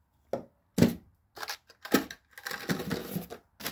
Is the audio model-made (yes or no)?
no